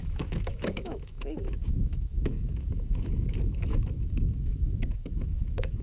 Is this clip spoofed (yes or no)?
yes